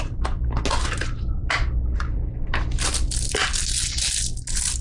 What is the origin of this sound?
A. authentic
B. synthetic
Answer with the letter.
A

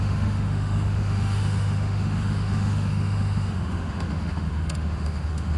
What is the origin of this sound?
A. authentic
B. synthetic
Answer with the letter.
B